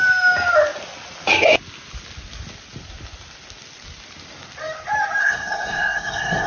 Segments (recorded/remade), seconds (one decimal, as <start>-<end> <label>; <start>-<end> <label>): 0.0-5.2 recorded; 5.2-6.5 remade